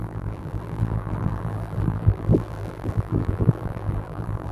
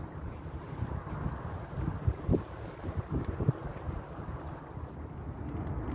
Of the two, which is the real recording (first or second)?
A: second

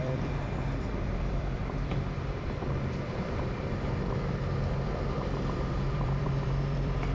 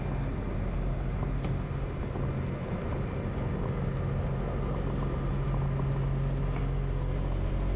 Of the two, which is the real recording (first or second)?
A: second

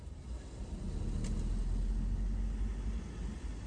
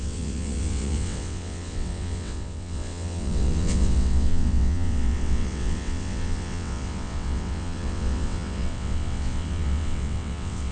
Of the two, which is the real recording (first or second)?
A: first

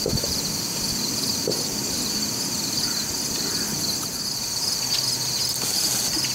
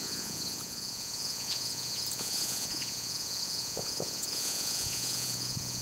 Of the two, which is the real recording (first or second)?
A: first